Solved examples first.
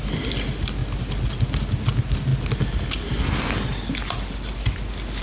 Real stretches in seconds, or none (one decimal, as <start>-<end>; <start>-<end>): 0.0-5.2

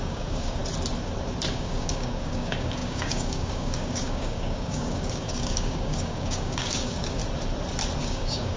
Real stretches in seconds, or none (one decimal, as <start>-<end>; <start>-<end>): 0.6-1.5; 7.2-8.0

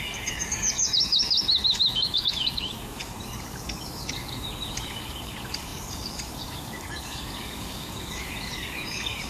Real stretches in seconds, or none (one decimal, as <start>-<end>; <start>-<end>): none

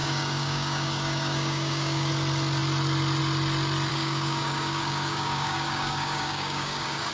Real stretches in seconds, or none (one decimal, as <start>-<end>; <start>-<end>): 2.1-3.9

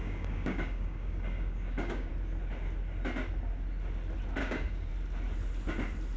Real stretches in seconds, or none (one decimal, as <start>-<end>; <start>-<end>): 2.1-4.4; 4.9-6.2

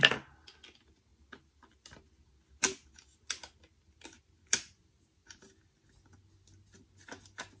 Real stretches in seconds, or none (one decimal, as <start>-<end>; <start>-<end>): 0.0-7.6

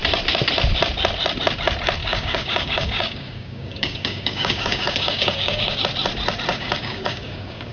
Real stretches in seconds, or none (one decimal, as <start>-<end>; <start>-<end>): 0.0-2.0; 5.8-6.5